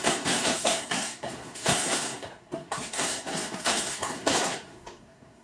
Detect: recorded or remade remade